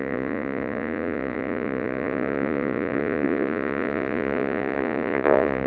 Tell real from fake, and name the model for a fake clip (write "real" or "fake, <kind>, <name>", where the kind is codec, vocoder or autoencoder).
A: fake, vocoder, Vocos